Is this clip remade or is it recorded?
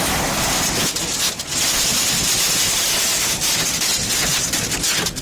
recorded